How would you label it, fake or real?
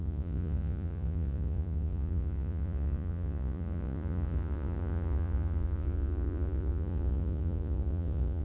fake